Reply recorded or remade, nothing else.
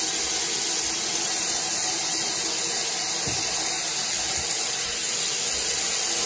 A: recorded